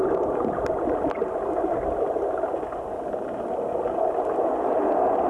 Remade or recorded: recorded